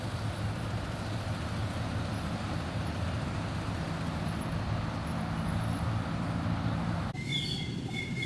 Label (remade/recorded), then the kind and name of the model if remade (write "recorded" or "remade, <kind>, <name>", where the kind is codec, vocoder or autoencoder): recorded